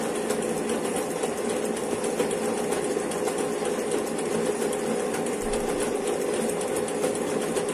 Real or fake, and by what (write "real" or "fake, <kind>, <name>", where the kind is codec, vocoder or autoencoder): real